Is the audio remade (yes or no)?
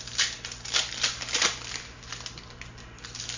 no